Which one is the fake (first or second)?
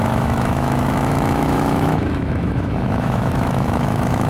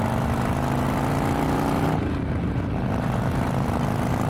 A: first